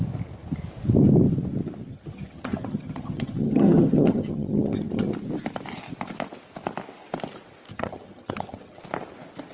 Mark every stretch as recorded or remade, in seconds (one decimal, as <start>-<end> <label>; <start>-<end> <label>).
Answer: 0.0-1.9 recorded; 1.9-5.1 remade; 5.1-7.7 recorded; 7.7-8.8 remade; 8.8-9.5 recorded